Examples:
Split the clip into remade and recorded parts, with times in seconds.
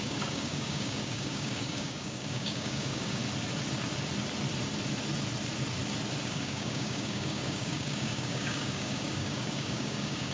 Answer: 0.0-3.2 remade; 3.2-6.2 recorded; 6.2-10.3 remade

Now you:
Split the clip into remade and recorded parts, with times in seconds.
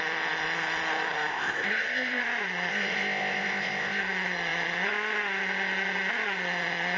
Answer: 0.0-1.3 recorded; 1.3-2.2 remade; 2.2-2.7 recorded; 2.7-4.0 remade; 4.0-7.0 recorded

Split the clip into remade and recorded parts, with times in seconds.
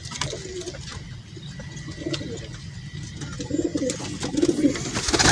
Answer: 0.0-5.3 recorded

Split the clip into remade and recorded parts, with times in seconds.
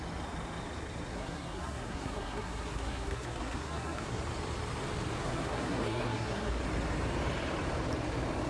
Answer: 0.0-1.1 recorded; 1.1-4.2 remade; 4.2-5.2 recorded; 5.2-6.6 remade; 6.6-8.5 recorded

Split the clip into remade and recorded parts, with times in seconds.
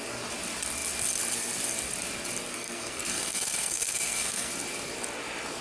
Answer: 0.0-2.5 recorded; 2.5-4.5 remade; 4.5-5.6 recorded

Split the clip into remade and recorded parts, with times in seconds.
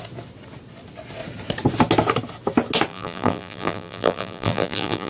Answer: 0.0-2.9 recorded; 2.9-5.1 remade